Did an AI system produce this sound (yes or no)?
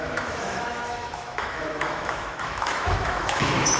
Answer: yes